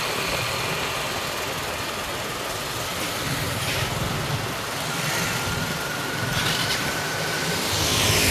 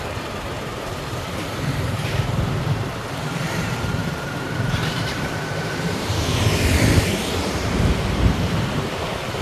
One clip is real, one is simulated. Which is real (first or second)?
first